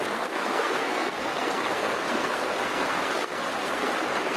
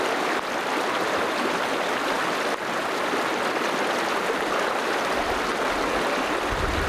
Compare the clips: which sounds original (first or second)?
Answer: second